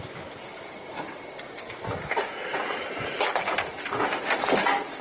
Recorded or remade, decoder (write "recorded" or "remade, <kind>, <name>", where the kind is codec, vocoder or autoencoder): recorded